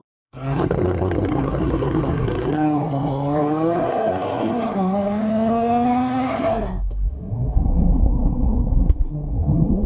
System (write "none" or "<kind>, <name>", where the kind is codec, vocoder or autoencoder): codec, SNAC